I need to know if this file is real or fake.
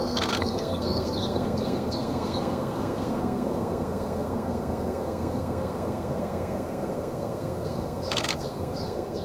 fake